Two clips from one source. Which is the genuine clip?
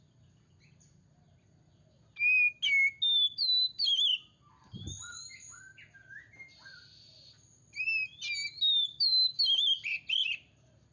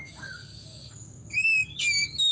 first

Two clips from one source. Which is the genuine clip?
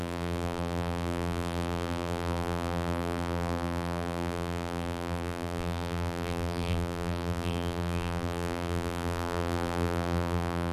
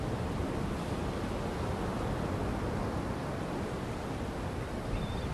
second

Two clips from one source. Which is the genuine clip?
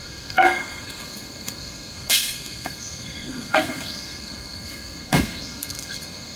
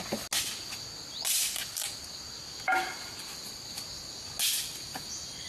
second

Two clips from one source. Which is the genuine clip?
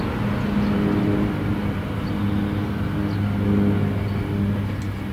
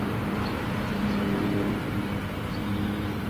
first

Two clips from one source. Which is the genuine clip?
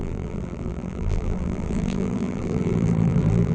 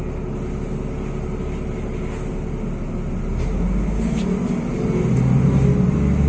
second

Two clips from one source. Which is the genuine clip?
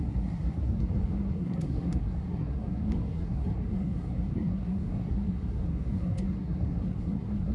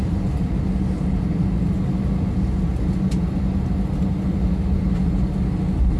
second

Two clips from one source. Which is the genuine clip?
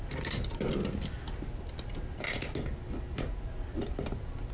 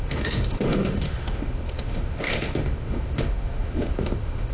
first